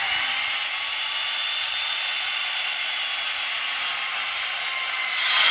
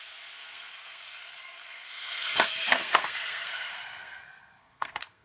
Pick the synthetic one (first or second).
second